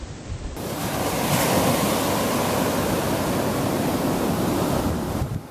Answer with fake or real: real